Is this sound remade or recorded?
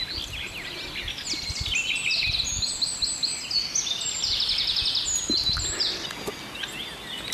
recorded